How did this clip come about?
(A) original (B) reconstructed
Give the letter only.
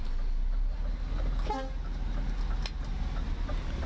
A